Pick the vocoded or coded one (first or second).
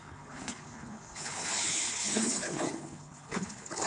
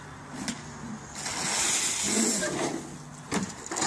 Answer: first